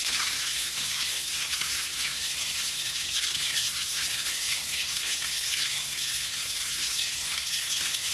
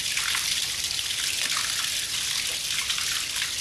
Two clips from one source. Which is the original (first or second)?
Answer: second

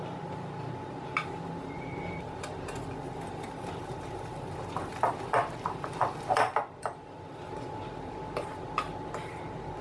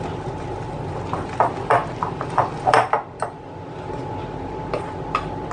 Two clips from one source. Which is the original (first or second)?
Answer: second